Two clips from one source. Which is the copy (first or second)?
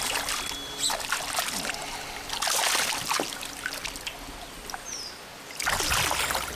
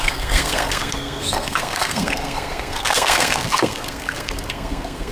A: second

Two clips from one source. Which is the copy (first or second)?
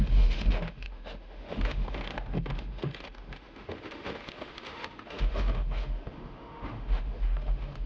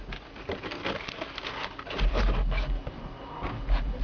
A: first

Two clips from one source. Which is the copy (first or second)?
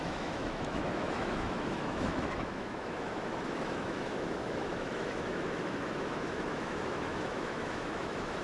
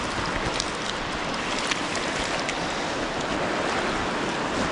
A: first